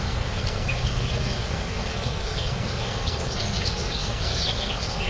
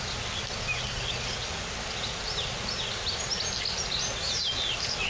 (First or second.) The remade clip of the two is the first